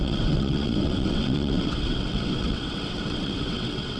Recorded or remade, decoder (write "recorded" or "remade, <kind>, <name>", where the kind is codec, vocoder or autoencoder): remade, vocoder, WaveNeXt